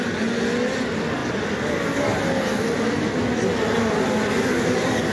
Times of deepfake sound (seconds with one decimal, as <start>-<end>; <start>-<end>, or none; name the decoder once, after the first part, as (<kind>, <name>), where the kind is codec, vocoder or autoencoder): none